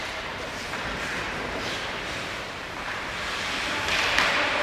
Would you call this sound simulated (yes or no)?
yes